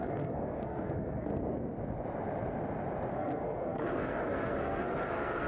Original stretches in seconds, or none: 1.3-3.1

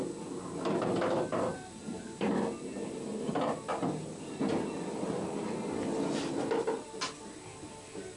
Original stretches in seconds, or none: 0.0-8.2

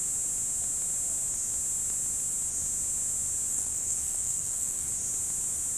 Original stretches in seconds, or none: 0.0-3.5; 4.9-5.8